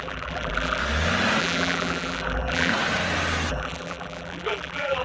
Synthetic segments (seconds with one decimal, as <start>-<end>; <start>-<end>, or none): 0.0-0.8; 1.4-2.7; 3.5-5.0